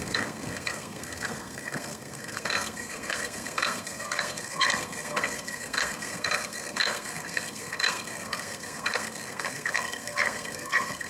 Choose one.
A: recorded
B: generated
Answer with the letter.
B